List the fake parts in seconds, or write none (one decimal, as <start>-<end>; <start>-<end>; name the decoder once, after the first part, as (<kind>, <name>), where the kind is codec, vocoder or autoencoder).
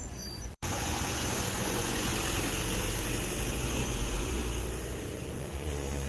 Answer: 0.0-2.1 (vocoder, Vocos); 3.5-4.4; 5.0-6.1